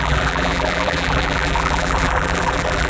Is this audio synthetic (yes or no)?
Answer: yes